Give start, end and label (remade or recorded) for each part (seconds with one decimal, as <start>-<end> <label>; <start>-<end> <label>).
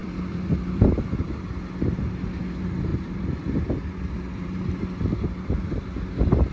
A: 0.0-1.2 remade; 1.2-2.9 recorded; 2.9-5.7 remade; 5.7-6.5 recorded